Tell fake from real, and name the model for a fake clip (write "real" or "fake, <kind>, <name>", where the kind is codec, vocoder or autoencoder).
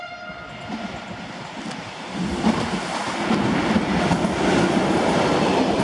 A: real